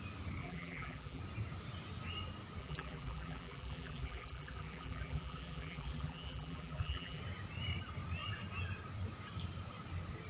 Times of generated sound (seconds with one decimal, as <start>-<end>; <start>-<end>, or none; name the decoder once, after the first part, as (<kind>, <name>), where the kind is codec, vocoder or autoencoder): 0.4-1.2 (vocoder, BigVGAN v2); 2.6-7.2